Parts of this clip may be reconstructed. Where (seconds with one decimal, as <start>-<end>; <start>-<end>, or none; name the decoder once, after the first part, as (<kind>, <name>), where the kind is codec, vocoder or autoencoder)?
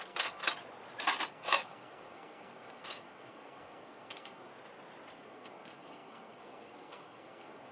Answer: 0.0-0.4 (codec, SNAC); 1.3-4.5; 5.1-7.7